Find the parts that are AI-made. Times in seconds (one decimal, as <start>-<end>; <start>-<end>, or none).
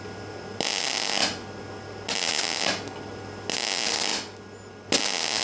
none